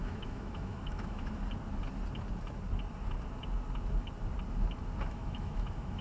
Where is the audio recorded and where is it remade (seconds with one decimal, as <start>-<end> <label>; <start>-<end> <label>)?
0.0-1.4 remade; 1.4-5.0 recorded; 5.0-6.0 remade